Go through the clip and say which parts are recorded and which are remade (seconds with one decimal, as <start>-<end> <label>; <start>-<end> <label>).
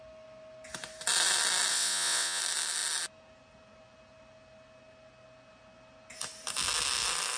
0.0-1.7 recorded; 1.7-2.4 remade; 2.4-7.4 recorded